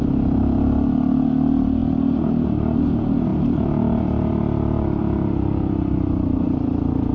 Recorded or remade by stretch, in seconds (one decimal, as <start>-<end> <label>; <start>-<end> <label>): 0.0-7.1 recorded